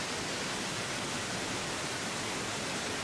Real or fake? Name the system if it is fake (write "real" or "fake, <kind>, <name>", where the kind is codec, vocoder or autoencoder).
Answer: real